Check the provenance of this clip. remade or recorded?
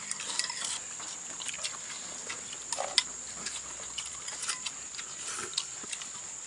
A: recorded